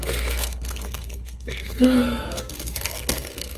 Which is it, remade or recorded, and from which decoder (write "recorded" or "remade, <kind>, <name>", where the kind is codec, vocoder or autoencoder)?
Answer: remade, codec, SNAC